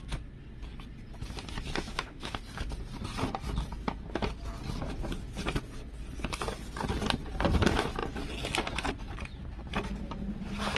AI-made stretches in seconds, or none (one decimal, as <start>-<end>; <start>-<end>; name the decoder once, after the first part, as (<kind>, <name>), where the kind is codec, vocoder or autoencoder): 1.9-2.4 (autoencoder, DAC-VAE)